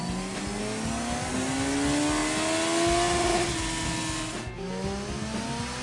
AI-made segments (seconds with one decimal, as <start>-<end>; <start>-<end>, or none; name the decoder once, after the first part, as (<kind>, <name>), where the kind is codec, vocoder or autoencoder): none